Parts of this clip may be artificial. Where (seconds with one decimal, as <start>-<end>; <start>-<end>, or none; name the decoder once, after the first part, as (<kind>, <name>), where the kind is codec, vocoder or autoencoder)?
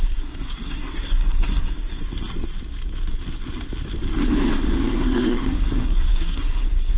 0.0-2.0 (codec, SNAC); 4.8-7.0